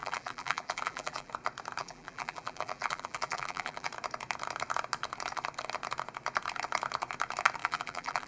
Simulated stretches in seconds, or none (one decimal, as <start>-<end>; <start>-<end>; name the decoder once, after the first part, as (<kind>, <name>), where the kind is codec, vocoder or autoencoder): 0.0-1.3 (vocoder, BigVGAN v2); 1.8-3.9; 7.6-8.3

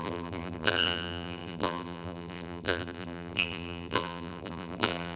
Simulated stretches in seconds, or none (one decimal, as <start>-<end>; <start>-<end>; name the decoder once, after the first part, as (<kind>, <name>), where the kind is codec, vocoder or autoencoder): 0.0-5.2 (vocoder, BigVGAN v2)

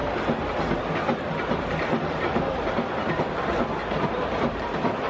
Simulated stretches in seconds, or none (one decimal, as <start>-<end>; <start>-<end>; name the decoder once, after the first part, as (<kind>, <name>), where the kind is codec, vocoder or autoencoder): 2.3-3.3 (vocoder, BigVGAN v2); 3.8-4.4